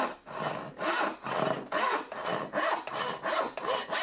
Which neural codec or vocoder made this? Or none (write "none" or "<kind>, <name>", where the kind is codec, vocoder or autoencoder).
none